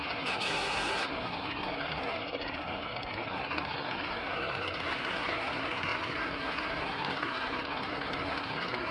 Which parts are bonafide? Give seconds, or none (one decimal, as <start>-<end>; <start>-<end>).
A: none